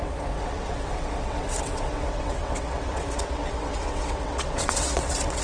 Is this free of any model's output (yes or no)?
no